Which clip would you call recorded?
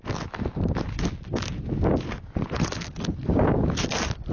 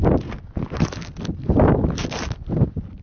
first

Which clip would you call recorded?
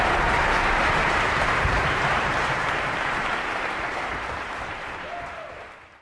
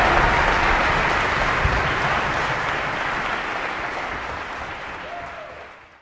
second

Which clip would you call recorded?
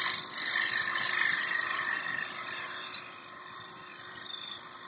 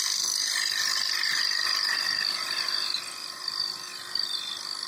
second